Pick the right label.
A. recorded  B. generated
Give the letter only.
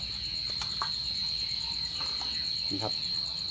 A